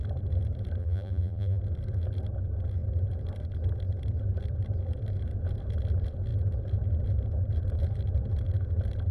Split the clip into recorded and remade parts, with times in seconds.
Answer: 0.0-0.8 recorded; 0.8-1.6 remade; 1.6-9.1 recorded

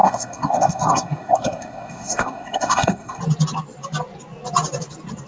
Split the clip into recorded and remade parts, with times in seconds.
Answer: 0.0-3.2 remade; 3.2-5.3 recorded

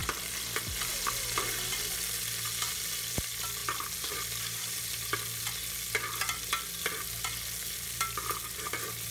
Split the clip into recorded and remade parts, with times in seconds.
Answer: 0.0-9.1 recorded